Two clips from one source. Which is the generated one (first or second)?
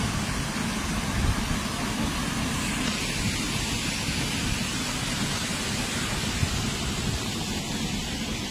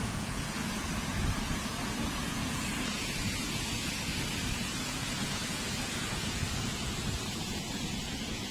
second